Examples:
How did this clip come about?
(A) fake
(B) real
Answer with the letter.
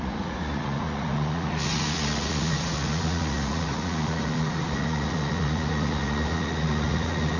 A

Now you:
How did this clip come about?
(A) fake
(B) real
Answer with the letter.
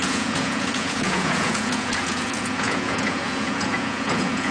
A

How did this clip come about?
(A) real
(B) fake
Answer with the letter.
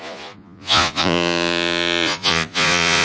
B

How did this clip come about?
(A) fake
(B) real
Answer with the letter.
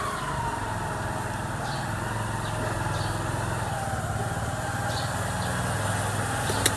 B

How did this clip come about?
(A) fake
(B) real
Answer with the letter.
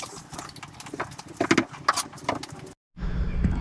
B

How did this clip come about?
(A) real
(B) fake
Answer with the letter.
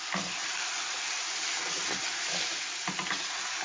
A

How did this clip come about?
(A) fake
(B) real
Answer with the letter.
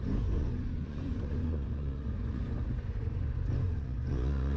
A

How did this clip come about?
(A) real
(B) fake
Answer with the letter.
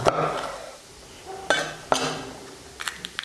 A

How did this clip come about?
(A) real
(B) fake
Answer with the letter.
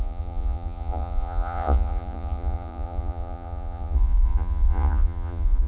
B